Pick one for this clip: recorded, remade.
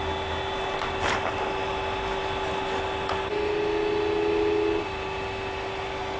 recorded